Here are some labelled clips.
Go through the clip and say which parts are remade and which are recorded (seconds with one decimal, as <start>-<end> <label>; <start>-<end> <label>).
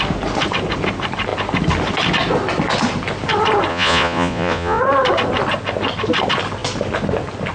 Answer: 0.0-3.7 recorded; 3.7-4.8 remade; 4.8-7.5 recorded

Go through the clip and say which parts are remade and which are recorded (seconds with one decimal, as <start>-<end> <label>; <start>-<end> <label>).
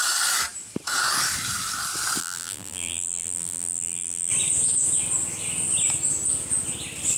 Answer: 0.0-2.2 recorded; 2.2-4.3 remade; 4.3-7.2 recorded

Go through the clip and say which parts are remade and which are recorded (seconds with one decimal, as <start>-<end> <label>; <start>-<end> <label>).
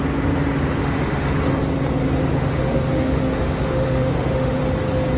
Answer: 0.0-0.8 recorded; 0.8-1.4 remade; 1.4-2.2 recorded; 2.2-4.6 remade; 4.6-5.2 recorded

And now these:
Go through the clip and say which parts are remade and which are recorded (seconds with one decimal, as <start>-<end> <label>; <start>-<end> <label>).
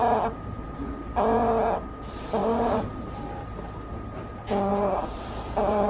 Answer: 0.0-2.4 recorded; 2.4-3.2 remade; 3.2-4.7 recorded; 4.7-5.9 remade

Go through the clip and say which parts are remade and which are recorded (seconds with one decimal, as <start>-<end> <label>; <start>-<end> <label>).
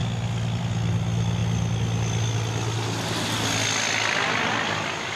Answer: 0.0-5.2 recorded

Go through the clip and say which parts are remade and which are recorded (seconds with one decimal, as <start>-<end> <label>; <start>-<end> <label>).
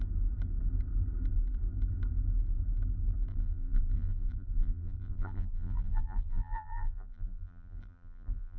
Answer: 0.0-3.3 recorded; 3.3-8.6 remade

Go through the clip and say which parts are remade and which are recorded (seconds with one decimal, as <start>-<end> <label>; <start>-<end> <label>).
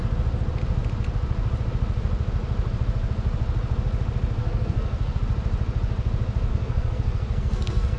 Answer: 0.0-4.4 recorded; 4.4-5.2 remade; 5.2-6.5 recorded; 6.5-8.0 remade